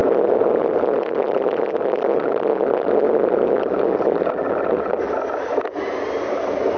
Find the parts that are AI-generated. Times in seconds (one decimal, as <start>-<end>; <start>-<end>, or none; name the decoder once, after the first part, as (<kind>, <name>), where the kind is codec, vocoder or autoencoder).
none